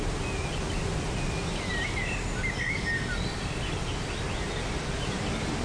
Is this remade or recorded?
recorded